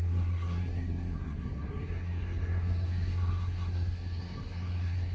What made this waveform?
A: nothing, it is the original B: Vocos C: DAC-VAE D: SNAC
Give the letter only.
D